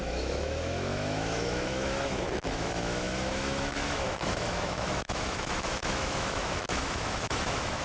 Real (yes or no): no